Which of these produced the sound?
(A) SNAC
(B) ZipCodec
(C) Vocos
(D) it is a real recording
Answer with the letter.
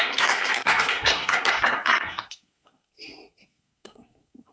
A